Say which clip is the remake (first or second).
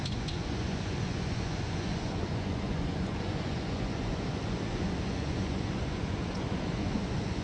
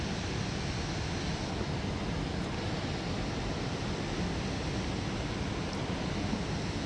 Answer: first